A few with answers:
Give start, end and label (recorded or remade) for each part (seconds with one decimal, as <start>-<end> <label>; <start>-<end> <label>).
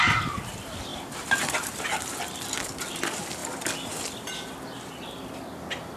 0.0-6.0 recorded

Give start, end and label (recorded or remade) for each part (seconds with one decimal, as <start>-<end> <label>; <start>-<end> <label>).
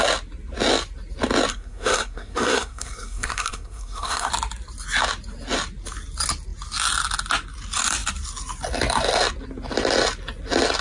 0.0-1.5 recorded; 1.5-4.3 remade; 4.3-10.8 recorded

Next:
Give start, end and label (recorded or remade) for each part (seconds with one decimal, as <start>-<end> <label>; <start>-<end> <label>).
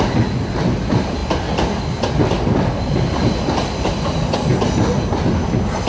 0.0-5.9 recorded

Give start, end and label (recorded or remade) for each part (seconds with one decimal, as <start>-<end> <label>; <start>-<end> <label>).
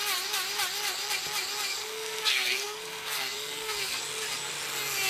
0.0-1.7 recorded; 1.7-4.0 remade; 4.0-5.1 recorded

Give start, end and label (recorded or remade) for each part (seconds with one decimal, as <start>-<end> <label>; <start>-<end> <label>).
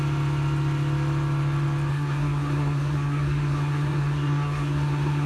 0.0-1.9 recorded; 1.9-5.3 remade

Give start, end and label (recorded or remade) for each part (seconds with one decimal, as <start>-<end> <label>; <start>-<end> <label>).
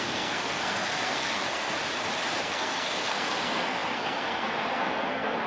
0.0-1.8 remade; 1.8-2.4 recorded; 2.4-5.5 remade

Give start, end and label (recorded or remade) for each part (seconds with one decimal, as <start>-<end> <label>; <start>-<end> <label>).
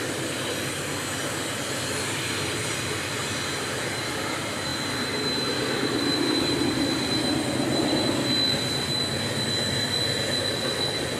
0.0-11.2 recorded